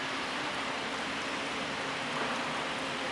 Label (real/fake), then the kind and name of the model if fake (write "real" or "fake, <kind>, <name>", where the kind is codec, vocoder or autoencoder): real